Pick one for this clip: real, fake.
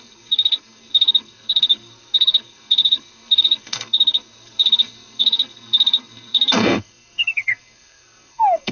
fake